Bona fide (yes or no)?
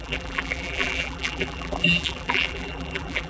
no